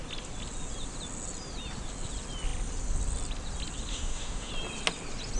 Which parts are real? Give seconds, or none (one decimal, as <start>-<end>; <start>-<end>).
0.0-3.9; 4.5-5.4